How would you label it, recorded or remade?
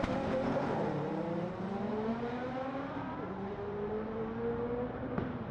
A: remade